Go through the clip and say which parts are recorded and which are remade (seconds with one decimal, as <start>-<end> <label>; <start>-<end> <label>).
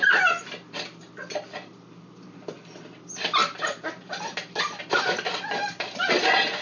0.0-3.4 remade; 3.4-4.8 recorded; 4.8-6.6 remade